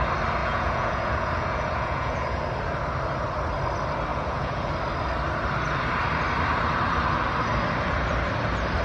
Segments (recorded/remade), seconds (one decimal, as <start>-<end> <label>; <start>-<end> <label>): 0.0-0.4 recorded; 0.4-2.4 remade; 2.4-4.1 recorded; 4.1-4.7 remade; 4.7-8.8 recorded